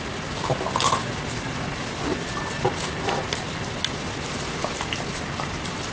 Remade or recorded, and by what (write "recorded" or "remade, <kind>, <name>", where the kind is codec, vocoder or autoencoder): recorded